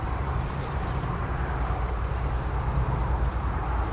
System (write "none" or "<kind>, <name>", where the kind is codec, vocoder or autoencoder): vocoder, BigVGAN v2